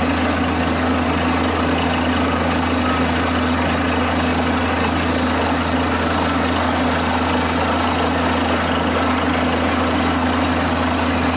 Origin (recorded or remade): recorded